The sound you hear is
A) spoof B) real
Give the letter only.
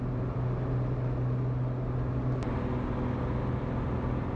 B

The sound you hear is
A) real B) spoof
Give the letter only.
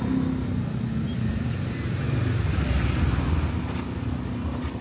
A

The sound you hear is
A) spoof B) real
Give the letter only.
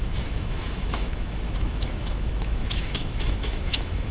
A